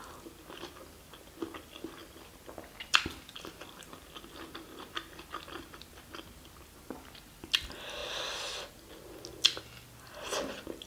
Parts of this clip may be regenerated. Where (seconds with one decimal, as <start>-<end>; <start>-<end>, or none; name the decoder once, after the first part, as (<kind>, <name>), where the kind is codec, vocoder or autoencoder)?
none